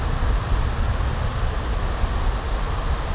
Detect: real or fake real